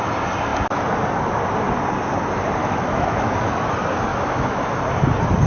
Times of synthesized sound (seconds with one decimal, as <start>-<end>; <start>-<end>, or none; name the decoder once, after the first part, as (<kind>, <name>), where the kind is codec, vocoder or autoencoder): 2.6-3.3 (autoencoder, DAC-VAE); 4.1-4.8